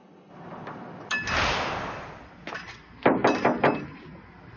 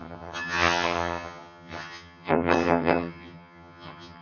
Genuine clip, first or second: first